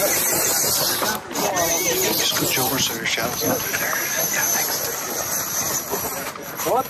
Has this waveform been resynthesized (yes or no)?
no